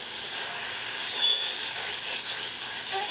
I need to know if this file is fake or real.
fake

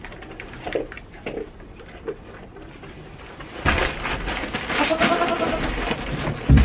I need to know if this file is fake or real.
real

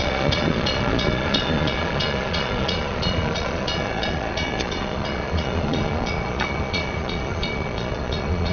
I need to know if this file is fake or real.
fake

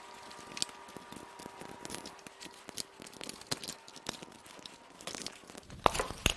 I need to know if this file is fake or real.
real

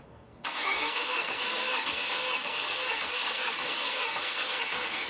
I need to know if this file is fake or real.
fake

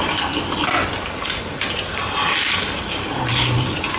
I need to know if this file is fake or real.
real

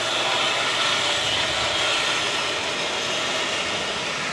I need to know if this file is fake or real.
real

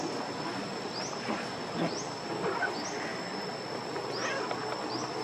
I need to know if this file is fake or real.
real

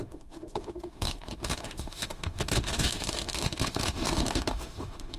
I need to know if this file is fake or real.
fake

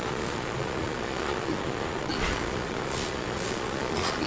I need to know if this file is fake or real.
fake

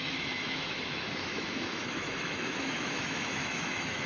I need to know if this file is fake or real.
fake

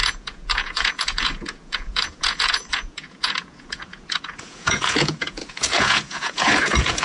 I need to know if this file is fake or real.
fake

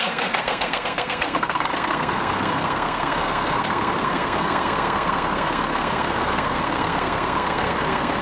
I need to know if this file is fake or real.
fake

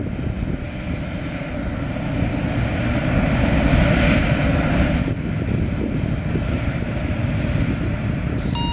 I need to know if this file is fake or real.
real